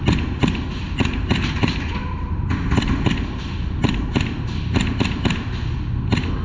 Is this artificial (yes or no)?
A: no